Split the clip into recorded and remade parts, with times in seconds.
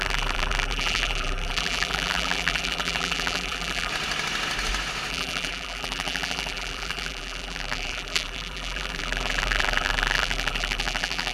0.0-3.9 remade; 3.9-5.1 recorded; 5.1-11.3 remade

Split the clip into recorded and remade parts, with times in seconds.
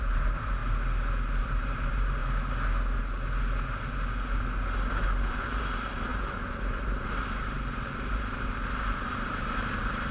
0.0-0.6 remade; 0.6-1.4 recorded; 1.4-2.2 remade; 2.2-5.2 recorded; 5.2-10.1 remade